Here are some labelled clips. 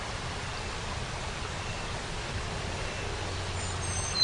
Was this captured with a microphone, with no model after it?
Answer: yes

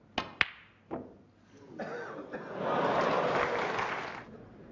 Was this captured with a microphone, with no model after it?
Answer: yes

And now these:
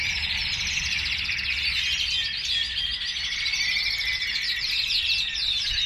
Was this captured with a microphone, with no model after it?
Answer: yes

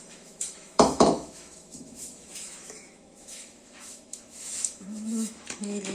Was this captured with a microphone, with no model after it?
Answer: no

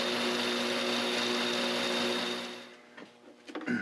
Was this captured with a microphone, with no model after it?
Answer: yes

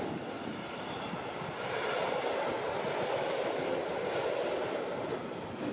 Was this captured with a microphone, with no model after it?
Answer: yes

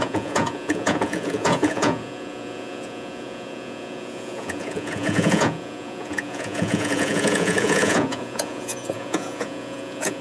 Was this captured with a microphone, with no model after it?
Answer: no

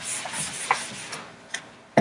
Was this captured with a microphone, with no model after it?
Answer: yes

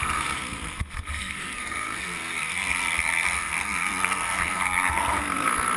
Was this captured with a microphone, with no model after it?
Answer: no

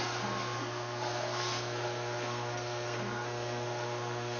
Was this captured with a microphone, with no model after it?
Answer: no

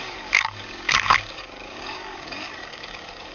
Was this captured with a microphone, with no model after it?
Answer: no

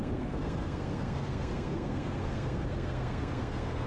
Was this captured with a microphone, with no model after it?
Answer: no